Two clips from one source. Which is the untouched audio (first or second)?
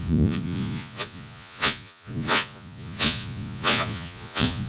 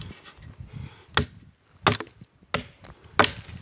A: second